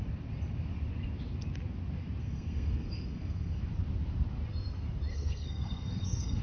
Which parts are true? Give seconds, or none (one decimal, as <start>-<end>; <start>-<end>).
0.0-2.2; 3.6-5.1